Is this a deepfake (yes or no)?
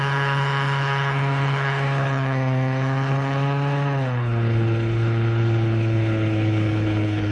yes